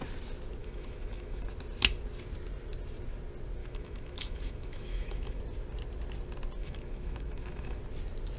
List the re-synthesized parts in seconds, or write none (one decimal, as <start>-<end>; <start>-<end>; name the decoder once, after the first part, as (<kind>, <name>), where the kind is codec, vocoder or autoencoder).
0.6-1.4 (autoencoder, DAC-VAE); 3.6-5.4; 6.6-7.8